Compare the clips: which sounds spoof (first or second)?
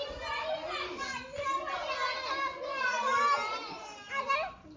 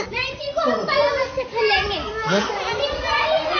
second